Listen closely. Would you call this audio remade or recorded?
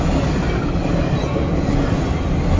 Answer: recorded